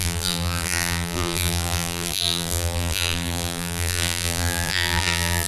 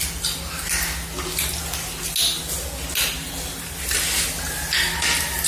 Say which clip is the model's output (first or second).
first